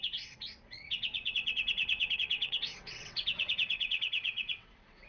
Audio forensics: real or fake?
fake